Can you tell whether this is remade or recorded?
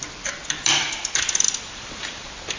remade